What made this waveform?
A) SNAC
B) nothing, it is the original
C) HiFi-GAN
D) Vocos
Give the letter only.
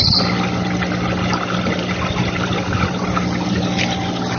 B